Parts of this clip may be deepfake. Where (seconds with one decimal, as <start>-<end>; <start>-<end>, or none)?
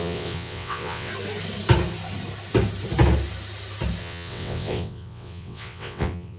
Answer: 0.0-1.1; 4.0-6.4